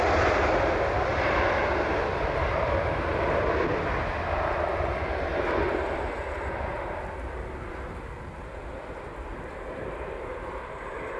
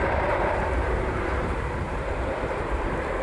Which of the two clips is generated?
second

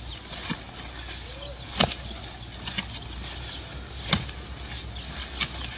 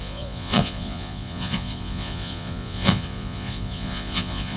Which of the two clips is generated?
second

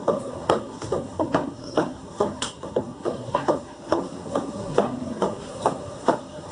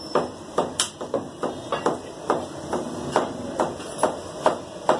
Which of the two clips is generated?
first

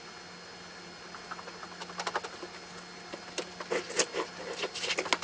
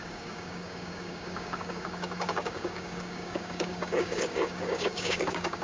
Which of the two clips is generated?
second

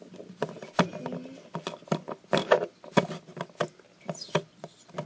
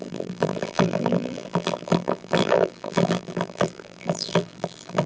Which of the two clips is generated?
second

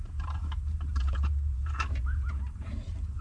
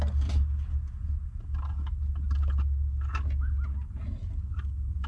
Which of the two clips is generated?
first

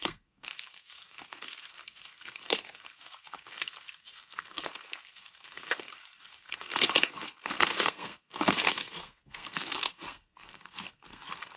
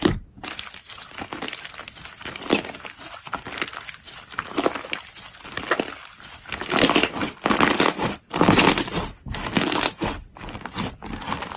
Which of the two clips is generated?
first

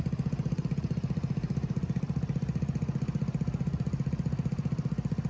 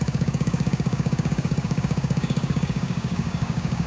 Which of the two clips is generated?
second